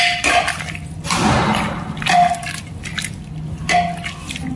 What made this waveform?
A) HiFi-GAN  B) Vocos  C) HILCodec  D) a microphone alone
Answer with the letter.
D